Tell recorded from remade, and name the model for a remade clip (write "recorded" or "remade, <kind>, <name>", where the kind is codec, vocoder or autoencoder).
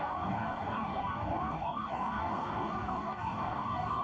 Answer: remade, codec, DAC